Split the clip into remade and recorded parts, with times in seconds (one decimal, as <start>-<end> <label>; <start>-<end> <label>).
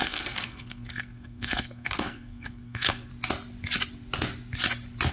0.0-3.1 remade; 3.1-5.1 recorded